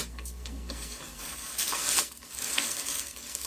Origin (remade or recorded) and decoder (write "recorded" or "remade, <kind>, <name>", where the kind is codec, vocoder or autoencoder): remade, codec, SNAC